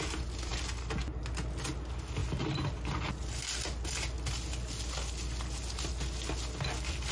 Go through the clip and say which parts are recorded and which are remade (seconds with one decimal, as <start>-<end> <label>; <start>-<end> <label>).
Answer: 0.0-7.1 recorded